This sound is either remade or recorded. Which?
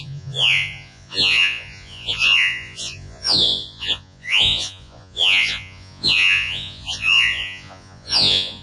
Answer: remade